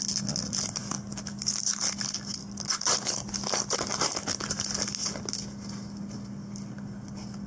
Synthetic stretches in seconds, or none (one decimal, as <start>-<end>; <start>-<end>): 0.8-1.8; 2.4-4.5